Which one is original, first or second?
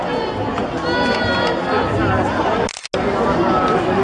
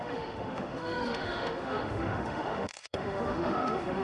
first